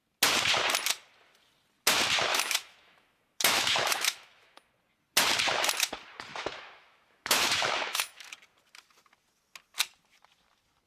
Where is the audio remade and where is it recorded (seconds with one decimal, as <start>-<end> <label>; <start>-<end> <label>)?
0.0-2.3 recorded; 2.3-4.7 remade; 4.7-6.3 recorded; 6.3-8.3 remade; 8.3-10.9 recorded